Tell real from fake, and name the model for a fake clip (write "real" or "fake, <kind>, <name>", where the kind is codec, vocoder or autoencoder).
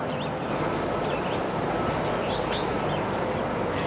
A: real